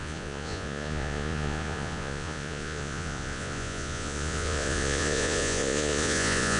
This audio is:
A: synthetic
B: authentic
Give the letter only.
A